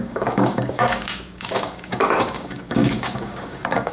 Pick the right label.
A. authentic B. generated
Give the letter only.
B